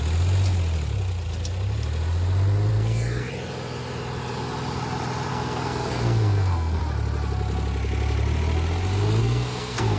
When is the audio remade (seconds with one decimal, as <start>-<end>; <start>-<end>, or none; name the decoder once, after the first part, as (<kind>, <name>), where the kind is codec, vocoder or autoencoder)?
2.7-3.3 (codec, SNAC); 5.3-6.8; 9.2-10.0